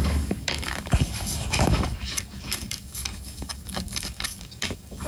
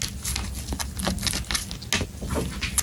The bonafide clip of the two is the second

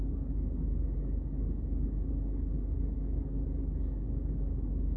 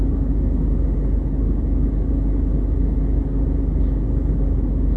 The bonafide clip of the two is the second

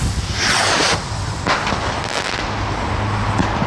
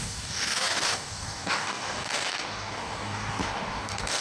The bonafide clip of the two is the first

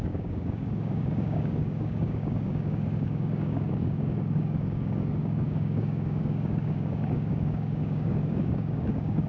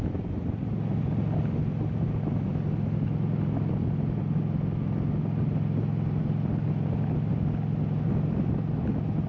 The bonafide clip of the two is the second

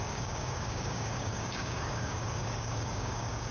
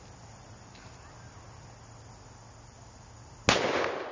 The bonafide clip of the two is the second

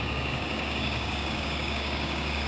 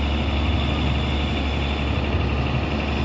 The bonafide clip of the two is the second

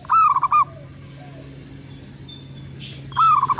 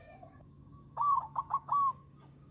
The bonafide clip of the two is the first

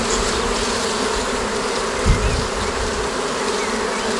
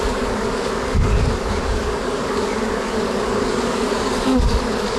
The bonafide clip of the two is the first